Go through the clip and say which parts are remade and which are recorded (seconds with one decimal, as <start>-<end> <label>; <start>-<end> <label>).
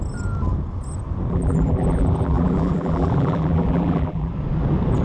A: 0.0-1.3 recorded; 1.3-4.3 remade; 4.3-5.0 recorded